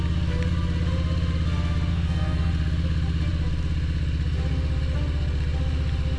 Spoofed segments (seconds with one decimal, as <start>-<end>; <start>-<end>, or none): 1.9-2.5